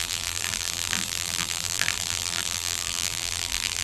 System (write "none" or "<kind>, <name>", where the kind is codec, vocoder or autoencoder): vocoder, BigVGAN v2